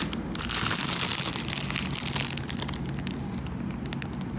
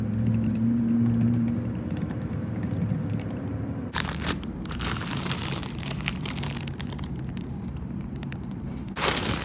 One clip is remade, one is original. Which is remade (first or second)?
second